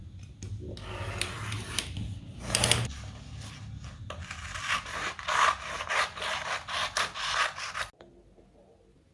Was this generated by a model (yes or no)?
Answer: no